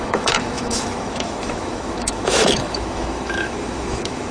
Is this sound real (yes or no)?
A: no